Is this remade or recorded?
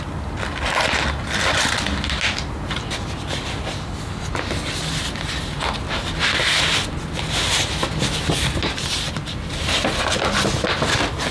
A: recorded